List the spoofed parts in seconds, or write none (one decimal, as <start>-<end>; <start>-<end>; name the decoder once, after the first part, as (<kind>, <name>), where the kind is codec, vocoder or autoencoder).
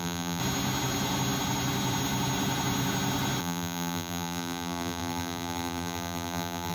0.0-0.4 (vocoder, BigVGAN v2); 3.4-6.7